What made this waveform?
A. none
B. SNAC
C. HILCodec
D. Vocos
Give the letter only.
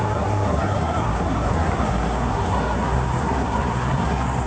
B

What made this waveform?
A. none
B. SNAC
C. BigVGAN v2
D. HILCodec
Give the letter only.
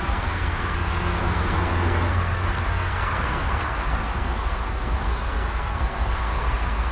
B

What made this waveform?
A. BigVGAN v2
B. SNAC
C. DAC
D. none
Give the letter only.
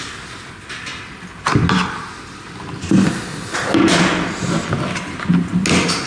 D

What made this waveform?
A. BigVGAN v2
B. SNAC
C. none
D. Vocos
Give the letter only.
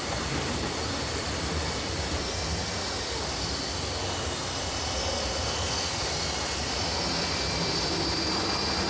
C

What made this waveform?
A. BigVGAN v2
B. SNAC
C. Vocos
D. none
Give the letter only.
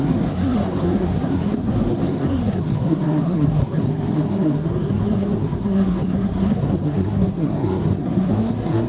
B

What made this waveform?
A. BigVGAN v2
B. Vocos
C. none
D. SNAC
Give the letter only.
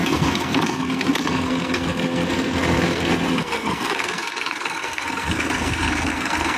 D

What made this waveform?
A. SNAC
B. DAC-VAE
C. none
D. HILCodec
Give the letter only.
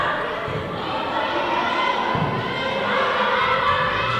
C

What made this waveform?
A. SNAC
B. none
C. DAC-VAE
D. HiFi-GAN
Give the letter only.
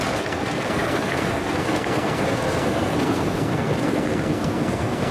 A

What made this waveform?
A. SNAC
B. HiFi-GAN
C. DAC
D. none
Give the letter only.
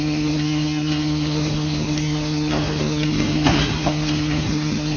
A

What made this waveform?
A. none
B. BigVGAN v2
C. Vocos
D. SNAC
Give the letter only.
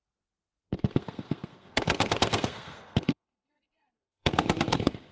D